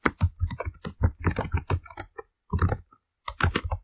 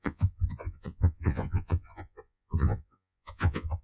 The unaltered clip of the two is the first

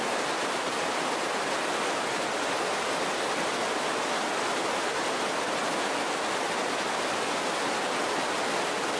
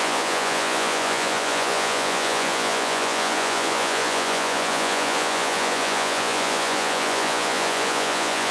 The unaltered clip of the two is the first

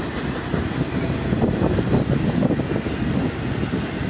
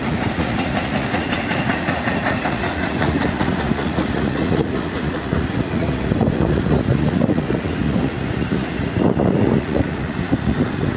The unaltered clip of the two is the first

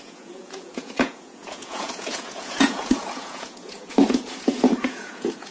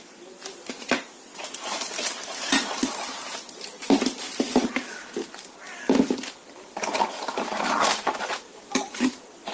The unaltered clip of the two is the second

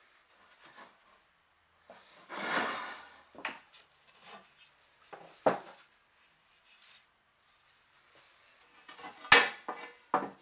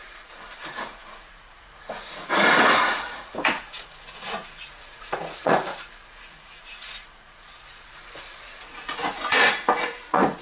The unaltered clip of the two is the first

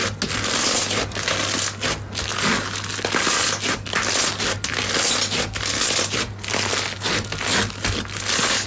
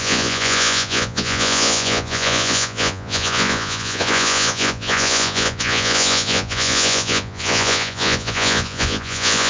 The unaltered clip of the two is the first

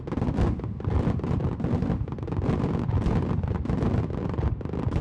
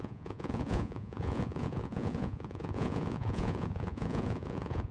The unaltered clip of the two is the first